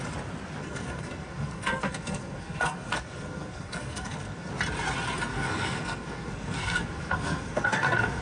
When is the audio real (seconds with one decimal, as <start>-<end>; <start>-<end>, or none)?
0.0-0.6; 4.5-5.3

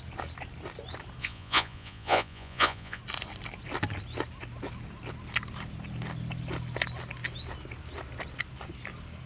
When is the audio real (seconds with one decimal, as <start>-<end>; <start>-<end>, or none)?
0.0-1.2; 3.0-9.3

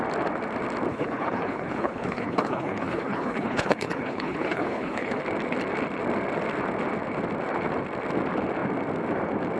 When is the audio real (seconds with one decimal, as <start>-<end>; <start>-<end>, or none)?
0.0-0.9; 5.2-9.6

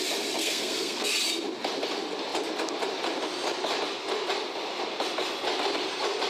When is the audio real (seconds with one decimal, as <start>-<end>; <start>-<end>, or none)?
0.0-0.4; 1.1-6.3

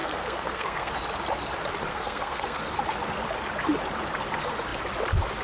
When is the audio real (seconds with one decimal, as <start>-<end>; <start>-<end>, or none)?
0.9-1.9; 2.6-5.4